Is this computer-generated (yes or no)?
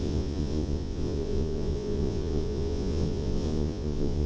yes